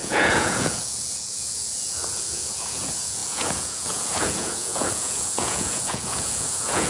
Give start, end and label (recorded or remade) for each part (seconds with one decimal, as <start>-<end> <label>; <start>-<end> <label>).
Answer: 0.0-6.9 remade